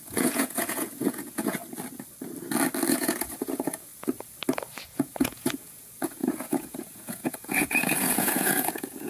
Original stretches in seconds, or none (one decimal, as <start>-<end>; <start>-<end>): 1.6-2.9; 3.9-4.8